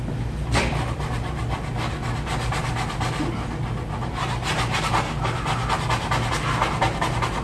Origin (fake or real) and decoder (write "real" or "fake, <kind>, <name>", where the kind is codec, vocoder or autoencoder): real